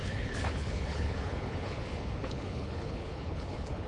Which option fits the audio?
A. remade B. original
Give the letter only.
A